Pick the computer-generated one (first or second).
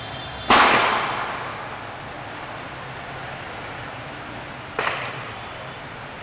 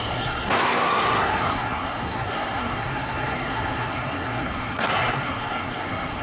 second